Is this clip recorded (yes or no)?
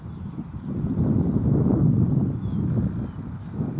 yes